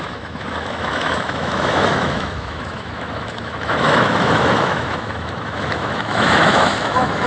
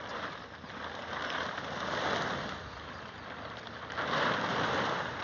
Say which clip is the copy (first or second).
first